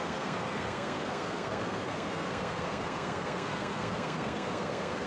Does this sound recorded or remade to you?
remade